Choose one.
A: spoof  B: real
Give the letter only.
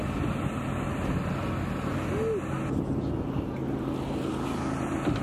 B